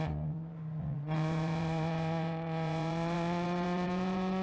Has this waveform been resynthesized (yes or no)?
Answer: yes